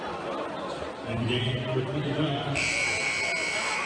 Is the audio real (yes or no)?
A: no